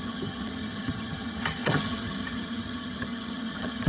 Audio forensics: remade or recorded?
remade